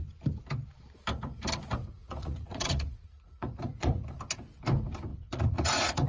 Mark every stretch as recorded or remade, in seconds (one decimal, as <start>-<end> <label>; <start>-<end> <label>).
0.0-2.0 recorded; 2.0-4.0 remade; 4.0-5.1 recorded; 5.1-6.1 remade